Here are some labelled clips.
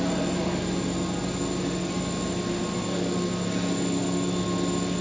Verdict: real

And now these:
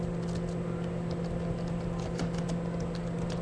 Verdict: real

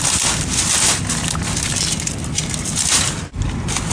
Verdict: real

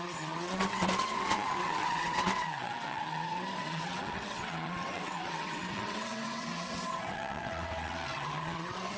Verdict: fake